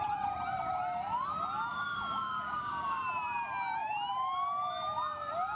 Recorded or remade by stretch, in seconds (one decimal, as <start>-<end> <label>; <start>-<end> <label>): 0.0-1.7 recorded; 1.7-3.0 remade; 3.0-5.6 recorded